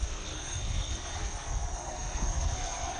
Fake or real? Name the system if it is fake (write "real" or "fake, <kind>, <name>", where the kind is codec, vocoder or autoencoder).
fake, codec, SNAC